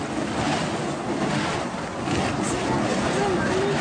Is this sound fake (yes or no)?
no